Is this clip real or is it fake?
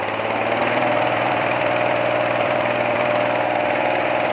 fake